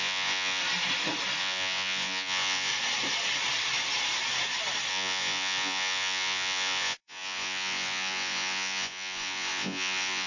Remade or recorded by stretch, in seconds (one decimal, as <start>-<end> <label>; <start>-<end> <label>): 0.0-0.6 remade; 0.6-1.4 recorded; 1.4-2.7 remade; 2.7-4.9 recorded; 4.9-10.3 remade